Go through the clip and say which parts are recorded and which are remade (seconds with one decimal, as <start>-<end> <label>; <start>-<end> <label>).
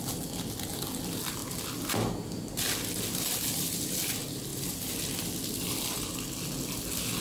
0.0-7.2 recorded